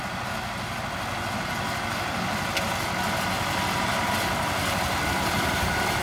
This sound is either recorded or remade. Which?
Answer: recorded